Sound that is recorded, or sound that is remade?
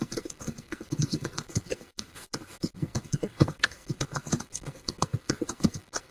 remade